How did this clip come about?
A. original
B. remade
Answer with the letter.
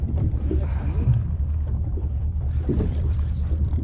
B